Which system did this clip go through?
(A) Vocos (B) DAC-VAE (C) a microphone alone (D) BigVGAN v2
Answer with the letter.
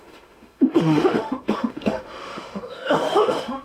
B